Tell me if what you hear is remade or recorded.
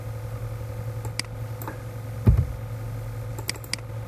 recorded